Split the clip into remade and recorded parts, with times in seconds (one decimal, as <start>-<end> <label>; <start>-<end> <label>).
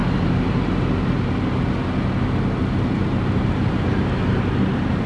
0.0-2.7 recorded; 2.7-5.1 remade